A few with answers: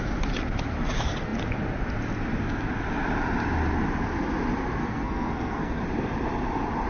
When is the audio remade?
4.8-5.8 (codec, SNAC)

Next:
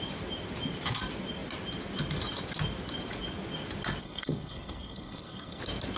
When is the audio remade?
4.0-5.6 (codec, SNAC)

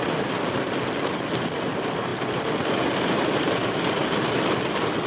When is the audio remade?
none

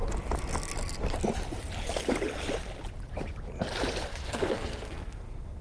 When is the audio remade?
4.1-5.6 (codec, SNAC)

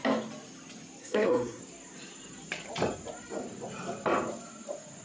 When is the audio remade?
1.0-1.6 (codec, SNAC)

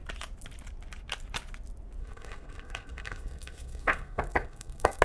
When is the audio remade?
2.0-5.0 (codec, SNAC)

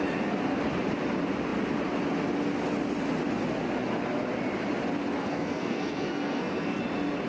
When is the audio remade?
5.2-6.8 (codec, SNAC)

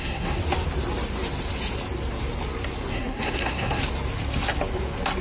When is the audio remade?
0.0-0.4 (codec, SNAC); 2.9-3.8